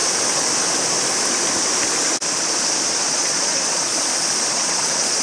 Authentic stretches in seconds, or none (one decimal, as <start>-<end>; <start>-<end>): 0.0-3.1; 3.9-4.5